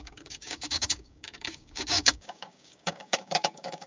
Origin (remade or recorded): remade